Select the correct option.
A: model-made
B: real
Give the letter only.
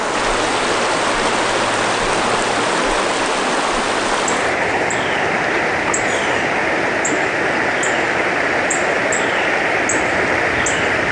B